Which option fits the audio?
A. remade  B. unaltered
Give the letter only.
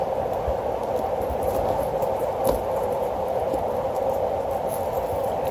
B